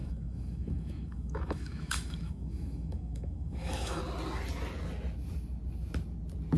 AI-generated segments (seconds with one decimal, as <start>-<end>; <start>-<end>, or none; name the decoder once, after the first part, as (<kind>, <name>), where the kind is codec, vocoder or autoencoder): 0.0-4.0 (autoencoder, DAC-VAE)